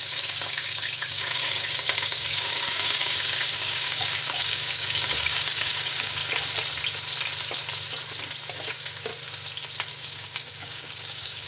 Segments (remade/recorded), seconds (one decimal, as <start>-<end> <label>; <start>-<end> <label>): 0.0-6.2 remade; 6.2-8.5 recorded; 8.5-9.1 remade; 9.1-9.9 recorded; 9.9-11.5 remade